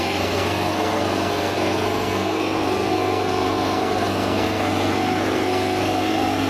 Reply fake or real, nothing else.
fake